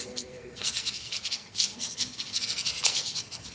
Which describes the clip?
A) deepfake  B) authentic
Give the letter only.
A